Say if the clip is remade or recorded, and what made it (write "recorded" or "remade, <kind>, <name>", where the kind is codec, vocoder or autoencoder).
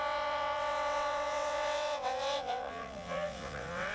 remade, vocoder, WaveNeXt